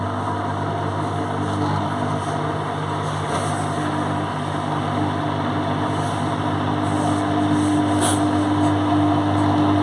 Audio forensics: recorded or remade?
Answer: recorded